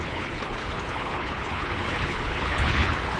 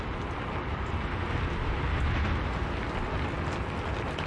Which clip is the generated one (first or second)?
first